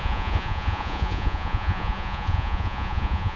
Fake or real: fake